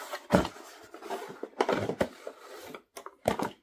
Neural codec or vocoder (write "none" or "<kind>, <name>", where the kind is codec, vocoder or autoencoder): none